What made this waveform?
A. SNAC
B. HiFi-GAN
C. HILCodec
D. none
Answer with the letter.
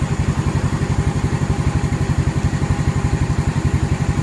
D